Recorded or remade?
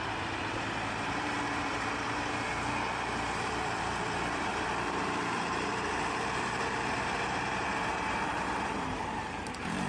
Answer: remade